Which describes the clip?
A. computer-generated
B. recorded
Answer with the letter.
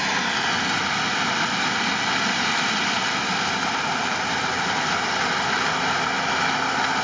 B